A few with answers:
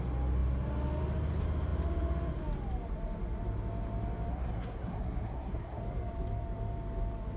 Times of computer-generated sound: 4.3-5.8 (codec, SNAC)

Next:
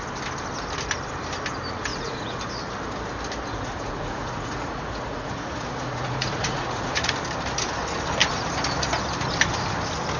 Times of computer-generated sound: 1.9-2.4 (vocoder, Vocos); 3.5-7.1